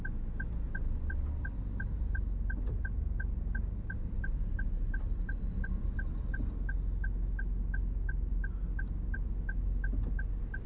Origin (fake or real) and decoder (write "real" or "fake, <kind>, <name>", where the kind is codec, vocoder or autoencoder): real